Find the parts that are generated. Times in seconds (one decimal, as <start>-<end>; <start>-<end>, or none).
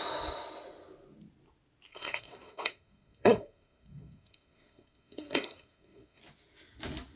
1.9-6.2